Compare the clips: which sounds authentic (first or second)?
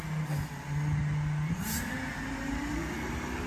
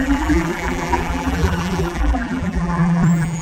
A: first